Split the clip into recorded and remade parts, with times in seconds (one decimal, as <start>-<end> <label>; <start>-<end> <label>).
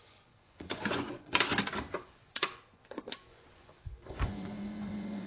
0.0-1.5 remade; 1.5-2.0 recorded; 2.0-5.3 remade